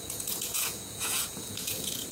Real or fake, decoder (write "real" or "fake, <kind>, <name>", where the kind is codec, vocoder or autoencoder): fake, vocoder, Vocos